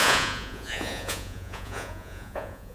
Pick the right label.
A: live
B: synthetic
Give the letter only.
B